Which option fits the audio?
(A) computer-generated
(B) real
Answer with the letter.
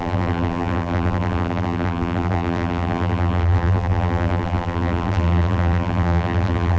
A